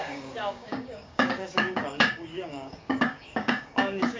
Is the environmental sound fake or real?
fake